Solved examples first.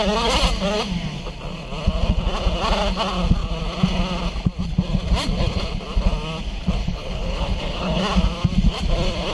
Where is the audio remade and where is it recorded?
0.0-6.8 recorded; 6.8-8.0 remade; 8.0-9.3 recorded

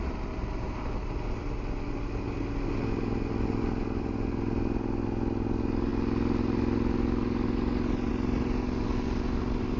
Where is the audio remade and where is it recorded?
0.0-9.8 recorded

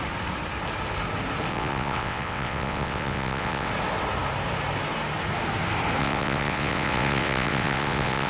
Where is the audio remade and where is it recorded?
0.0-1.5 recorded; 1.5-3.7 remade; 3.7-6.0 recorded; 6.0-8.3 remade

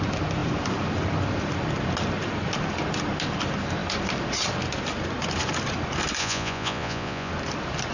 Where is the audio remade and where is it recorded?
0.0-6.2 recorded; 6.2-7.3 remade; 7.3-7.9 recorded

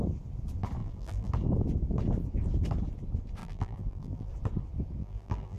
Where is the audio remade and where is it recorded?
0.0-0.8 recorded; 0.8-1.3 remade; 1.3-3.4 recorded; 3.4-4.3 remade; 4.3-5.0 recorded; 5.0-5.6 remade

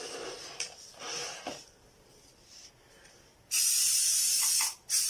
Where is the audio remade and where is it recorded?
0.0-5.1 recorded

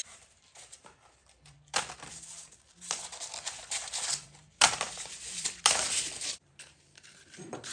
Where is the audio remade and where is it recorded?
0.0-7.7 remade